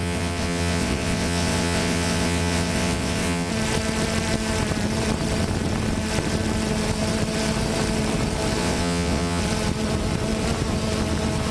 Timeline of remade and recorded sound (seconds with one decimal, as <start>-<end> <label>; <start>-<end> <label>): 0.0-3.5 remade; 3.5-8.6 recorded; 8.6-9.4 remade; 9.4-11.5 recorded